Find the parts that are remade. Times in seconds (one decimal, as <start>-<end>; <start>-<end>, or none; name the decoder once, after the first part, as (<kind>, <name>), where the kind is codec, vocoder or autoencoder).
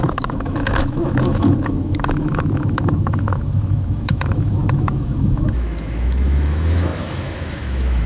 0.0-8.1 (autoencoder, DAC-VAE)